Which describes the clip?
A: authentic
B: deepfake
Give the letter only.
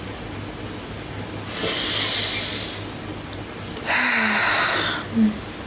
A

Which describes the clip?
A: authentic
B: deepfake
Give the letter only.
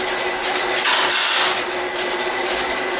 A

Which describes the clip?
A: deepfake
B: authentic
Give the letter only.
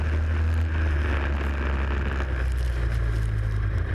B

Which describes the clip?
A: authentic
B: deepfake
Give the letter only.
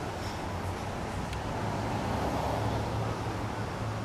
A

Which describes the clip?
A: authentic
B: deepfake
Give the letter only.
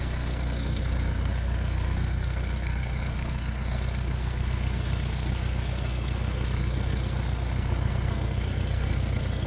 B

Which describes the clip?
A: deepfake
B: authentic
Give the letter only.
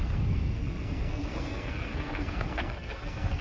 A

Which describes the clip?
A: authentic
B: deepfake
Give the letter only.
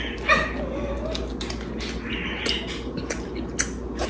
A